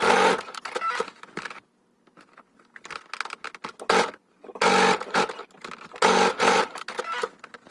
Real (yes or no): yes